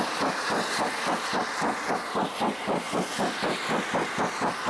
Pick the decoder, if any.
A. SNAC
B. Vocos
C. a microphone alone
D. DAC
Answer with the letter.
C